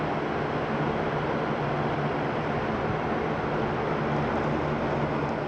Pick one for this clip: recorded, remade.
recorded